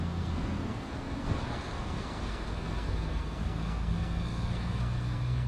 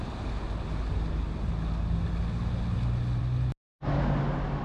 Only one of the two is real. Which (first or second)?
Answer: second